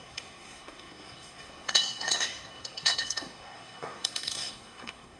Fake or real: fake